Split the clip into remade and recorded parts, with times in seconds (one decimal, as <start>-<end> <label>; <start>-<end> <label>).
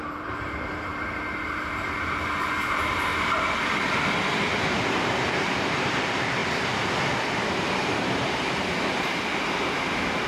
0.0-3.1 remade; 3.1-4.8 recorded; 4.8-6.4 remade; 6.4-7.5 recorded; 7.5-10.3 remade